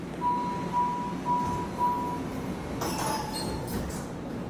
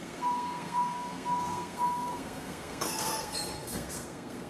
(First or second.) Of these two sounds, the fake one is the second